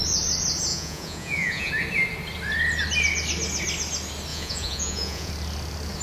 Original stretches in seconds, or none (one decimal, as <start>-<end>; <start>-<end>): 0.0-0.7; 1.7-4.3; 5.3-6.0